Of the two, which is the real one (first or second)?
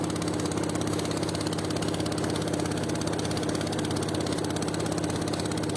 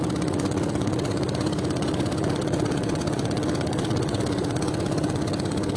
first